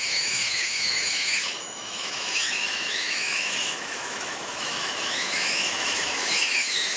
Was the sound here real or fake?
fake